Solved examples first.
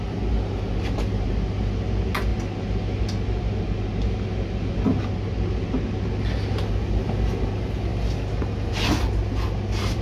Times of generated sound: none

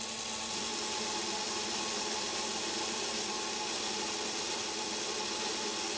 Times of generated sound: none

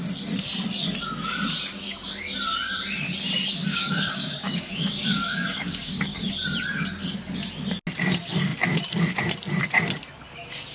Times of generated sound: 3.7-6.3 (codec, DAC)

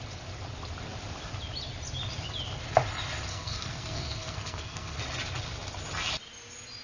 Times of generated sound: 3.3-5.0 (codec, SNAC)

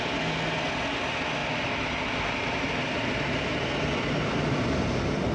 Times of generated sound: 1.4-3.7 (vocoder, BigVGAN v2)

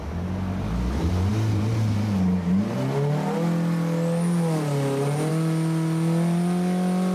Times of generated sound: none

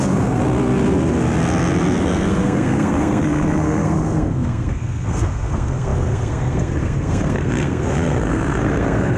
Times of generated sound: 0.0-0.4 (codec, SNAC); 2.0-9.2